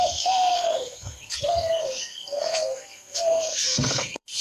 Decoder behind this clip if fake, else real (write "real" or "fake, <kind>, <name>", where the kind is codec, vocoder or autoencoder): fake, codec, SNAC